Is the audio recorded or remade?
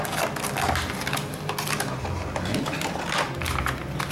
recorded